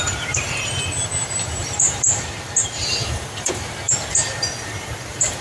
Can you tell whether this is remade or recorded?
remade